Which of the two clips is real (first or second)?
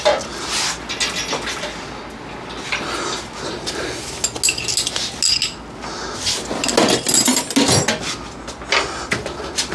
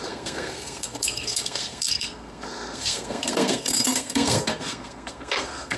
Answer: first